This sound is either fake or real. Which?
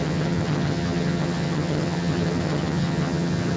fake